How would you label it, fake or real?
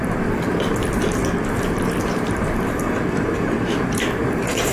fake